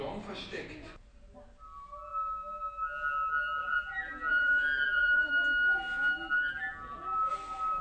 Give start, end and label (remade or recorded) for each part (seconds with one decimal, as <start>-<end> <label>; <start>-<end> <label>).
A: 0.0-3.6 recorded; 3.6-5.3 remade; 5.3-7.8 recorded